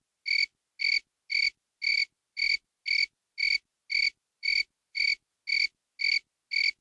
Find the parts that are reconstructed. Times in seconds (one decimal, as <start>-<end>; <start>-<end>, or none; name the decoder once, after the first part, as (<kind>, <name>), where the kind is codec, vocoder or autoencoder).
1.9-2.8 (vocoder, BigVGAN v2); 4.4-5.3